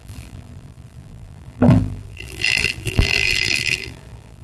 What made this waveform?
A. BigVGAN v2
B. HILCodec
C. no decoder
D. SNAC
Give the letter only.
A